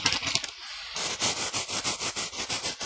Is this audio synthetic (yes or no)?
no